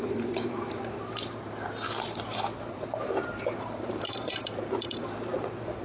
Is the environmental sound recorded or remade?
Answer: remade